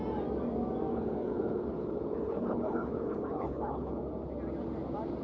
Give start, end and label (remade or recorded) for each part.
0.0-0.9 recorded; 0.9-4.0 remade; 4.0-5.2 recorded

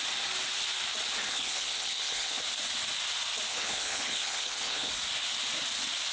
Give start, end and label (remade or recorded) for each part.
0.0-1.2 recorded; 1.2-2.4 remade; 2.4-3.5 recorded; 3.5-4.9 remade; 4.9-6.1 recorded

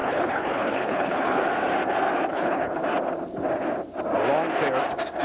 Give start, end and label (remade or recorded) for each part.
0.0-1.4 remade; 1.4-2.3 recorded; 2.3-2.8 remade; 2.8-5.2 recorded

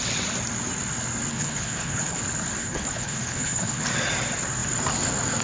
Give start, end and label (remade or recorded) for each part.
0.0-1.3 recorded; 1.3-2.2 remade; 2.2-2.6 recorded; 2.6-3.8 remade; 3.8-5.4 recorded

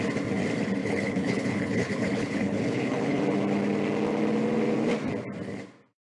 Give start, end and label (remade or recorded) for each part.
0.0-0.8 recorded; 0.8-3.2 remade; 3.2-6.0 recorded

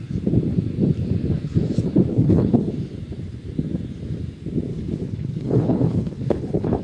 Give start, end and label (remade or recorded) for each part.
0.0-2.1 recorded; 2.1-2.7 remade; 2.7-4.7 recorded; 4.7-6.8 remade